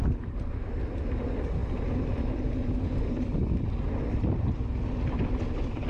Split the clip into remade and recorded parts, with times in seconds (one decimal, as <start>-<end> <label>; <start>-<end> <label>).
0.0-5.9 recorded